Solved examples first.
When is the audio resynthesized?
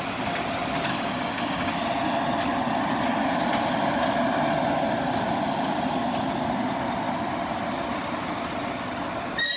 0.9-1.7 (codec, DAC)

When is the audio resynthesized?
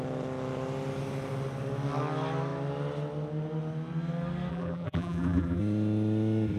4.5-5.6 (vocoder, BigVGAN v2)